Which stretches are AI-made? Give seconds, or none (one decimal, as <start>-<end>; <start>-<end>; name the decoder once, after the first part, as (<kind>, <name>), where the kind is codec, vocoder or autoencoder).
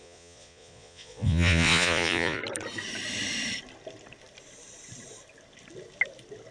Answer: 0.0-2.4 (vocoder, Vocos)